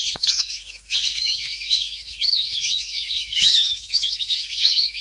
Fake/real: fake